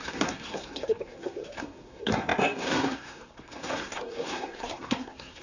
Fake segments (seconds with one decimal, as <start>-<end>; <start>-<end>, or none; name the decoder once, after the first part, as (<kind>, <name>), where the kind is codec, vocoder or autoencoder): 0.0-5.4 (codec, SNAC)